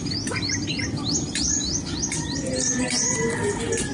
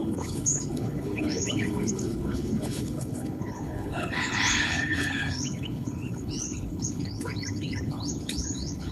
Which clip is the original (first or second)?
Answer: first